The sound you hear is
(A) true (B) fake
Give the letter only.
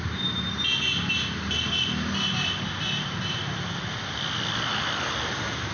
A